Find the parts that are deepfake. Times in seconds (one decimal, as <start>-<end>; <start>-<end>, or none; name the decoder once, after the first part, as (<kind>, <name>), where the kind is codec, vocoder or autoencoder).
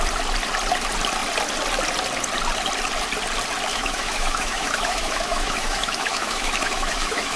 3.7-7.4 (autoencoder, DAC-VAE)